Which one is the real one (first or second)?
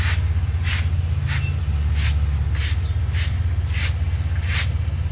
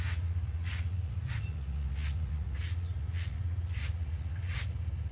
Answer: first